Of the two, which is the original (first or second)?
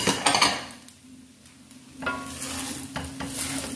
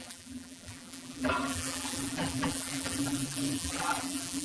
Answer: first